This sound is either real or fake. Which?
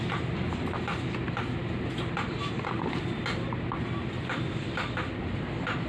fake